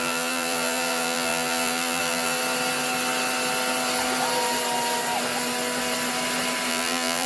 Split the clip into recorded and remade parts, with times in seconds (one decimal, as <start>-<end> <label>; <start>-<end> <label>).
0.0-2.4 remade; 2.4-6.7 recorded; 6.7-7.3 remade